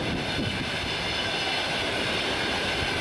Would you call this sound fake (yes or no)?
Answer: no